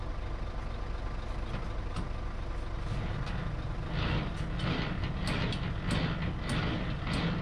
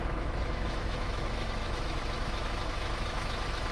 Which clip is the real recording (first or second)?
first